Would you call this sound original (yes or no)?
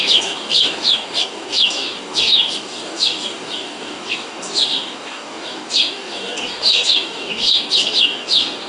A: no